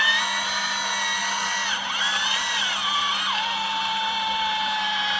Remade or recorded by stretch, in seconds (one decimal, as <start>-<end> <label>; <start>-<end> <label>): 0.0-5.2 recorded